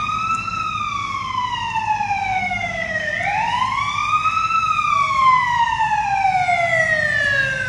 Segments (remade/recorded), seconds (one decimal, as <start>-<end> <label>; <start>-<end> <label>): 0.0-2.4 recorded; 2.4-3.1 remade; 3.1-7.7 recorded